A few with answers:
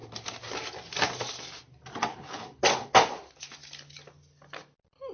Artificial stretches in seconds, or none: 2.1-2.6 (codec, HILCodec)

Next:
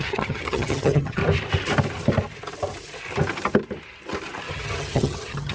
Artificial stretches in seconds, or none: 0.0-1.2 (vocoder, HiFi-GAN); 4.5-5.5

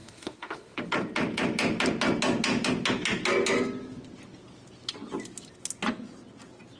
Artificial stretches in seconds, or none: 0.0-0.9 (autoencoder, DAC-VAE)

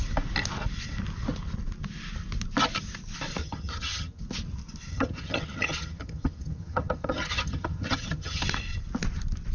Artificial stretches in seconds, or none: 3.4-4.2 (vocoder, HiFi-GAN); 4.9-8.4

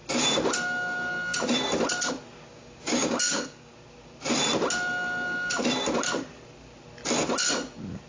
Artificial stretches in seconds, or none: 2.5-3.7 (codec, DAC)

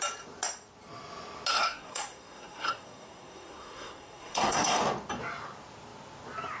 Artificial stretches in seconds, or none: 1.5-4.8 (codec, SNAC)

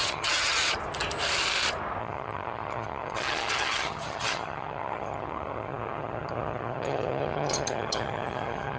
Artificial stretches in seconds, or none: 0.0-0.6 (vocoder, HiFi-GAN); 2.0-8.8